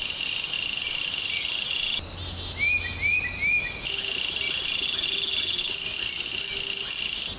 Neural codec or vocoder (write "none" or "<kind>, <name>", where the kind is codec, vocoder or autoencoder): none